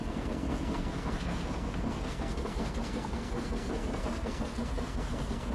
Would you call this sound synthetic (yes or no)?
yes